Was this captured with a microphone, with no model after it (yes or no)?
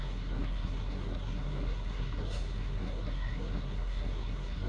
no